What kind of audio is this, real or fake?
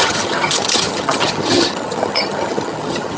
fake